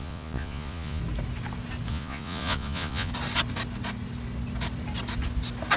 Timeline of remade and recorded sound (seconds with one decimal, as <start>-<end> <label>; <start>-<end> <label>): 0.0-1.0 remade; 1.0-1.9 recorded; 1.9-3.1 remade; 3.1-5.8 recorded